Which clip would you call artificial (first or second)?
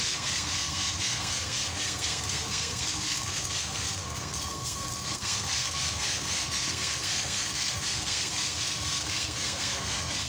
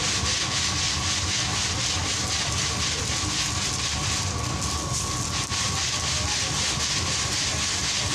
first